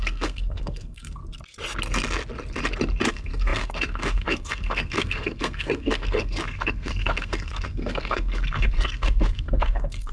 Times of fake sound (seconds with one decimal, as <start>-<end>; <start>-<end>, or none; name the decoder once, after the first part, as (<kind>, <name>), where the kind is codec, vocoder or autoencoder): 0.0-1.2 (codec, SNAC); 3.1-10.1